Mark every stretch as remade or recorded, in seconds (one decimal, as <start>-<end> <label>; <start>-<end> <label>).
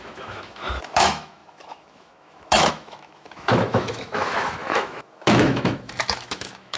0.0-6.8 remade